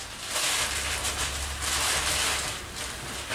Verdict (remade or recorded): recorded